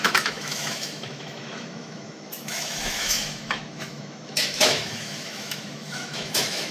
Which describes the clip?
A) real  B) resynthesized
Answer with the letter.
B